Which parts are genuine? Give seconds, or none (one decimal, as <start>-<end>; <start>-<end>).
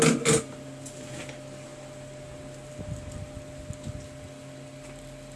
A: 0.0-5.4